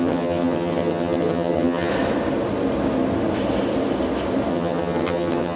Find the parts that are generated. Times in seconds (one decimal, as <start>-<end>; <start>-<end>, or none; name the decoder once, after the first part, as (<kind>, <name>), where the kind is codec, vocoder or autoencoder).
0.0-1.9 (vocoder, HiFi-GAN); 4.5-5.6